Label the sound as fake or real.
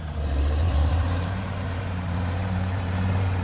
fake